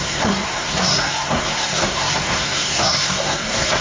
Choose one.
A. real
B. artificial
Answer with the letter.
B